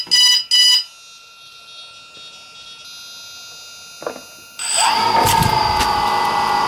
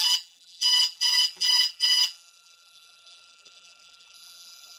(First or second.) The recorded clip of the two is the first